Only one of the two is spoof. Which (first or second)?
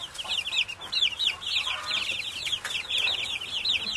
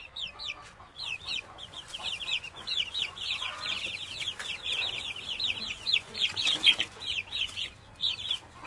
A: second